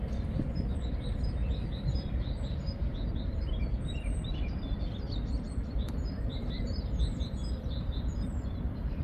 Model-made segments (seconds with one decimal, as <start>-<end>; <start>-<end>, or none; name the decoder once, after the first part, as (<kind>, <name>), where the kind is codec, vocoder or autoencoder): 0.0-9.0 (vocoder, BigVGAN v2)